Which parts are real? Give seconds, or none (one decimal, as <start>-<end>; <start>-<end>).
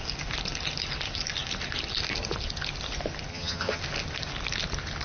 0.0-3.3; 3.8-5.0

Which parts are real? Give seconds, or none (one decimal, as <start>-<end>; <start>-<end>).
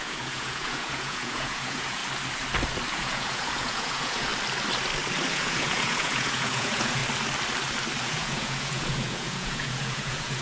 2.0-2.9; 4.3-5.3; 7.0-8.0